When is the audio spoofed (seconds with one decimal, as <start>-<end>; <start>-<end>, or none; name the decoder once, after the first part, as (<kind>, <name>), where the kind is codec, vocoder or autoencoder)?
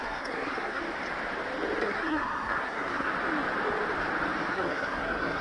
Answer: 0.0-0.8 (codec, SNAC); 1.8-3.1; 4.5-5.4